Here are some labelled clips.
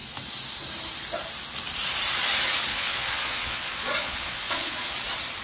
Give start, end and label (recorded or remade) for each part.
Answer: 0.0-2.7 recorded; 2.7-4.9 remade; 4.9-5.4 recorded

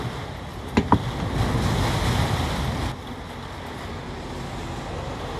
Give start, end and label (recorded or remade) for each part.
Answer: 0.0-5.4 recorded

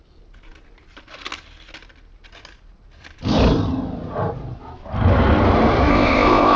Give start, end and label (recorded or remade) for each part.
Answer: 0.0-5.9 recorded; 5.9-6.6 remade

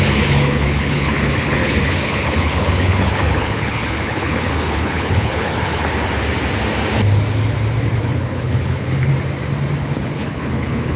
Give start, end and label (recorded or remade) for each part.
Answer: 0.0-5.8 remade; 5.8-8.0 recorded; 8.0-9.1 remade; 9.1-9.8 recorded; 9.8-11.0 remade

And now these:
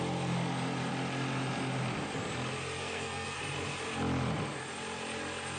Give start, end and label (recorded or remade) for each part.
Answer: 0.0-2.8 recorded; 2.8-3.4 remade; 3.4-5.6 recorded

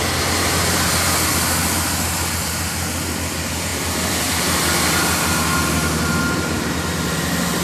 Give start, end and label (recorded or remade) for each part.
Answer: 0.0-7.6 recorded